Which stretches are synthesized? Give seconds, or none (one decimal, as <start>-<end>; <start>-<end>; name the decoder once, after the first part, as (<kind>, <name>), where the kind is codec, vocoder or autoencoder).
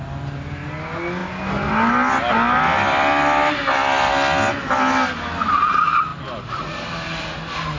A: none